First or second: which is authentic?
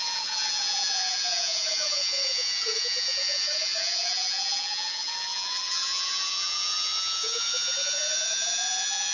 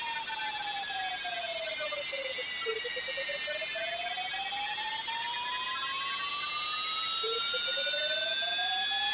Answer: second